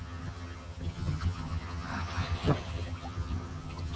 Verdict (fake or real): fake